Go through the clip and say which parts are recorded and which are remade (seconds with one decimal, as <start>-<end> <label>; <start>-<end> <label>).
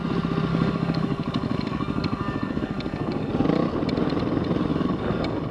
0.0-0.5 recorded; 0.5-3.3 remade; 3.3-4.7 recorded; 4.7-5.5 remade